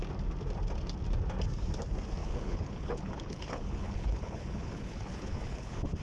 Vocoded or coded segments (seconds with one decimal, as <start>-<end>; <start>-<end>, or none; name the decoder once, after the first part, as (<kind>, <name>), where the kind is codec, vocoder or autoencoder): 2.2-6.0 (codec, HILCodec)